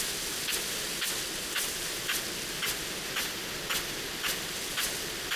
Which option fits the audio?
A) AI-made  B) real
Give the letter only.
B